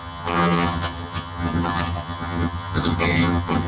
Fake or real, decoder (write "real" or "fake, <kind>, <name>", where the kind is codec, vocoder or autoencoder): fake, vocoder, HiFi-GAN